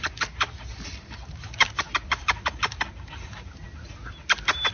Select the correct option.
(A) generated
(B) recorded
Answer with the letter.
B